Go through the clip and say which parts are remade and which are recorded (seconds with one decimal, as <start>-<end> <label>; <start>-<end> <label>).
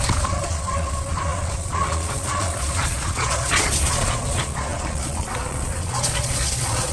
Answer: 0.0-6.9 remade